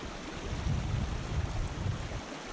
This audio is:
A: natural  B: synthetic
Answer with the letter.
A